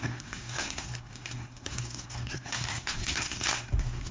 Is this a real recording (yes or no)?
no